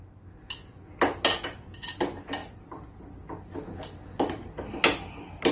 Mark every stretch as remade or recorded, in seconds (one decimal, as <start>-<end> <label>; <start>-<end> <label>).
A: 0.0-5.5 recorded